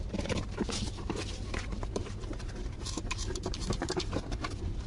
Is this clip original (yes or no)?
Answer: no